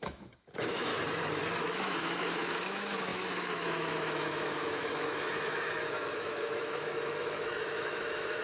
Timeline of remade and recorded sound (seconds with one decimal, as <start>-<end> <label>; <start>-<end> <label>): 0.0-0.9 remade; 0.9-1.6 recorded; 1.6-8.4 remade